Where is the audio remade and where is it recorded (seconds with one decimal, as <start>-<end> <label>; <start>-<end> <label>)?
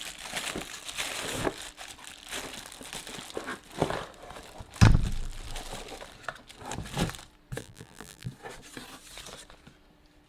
0.0-7.6 recorded; 7.6-8.3 remade; 8.3-10.3 recorded